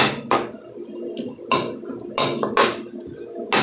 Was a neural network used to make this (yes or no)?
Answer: no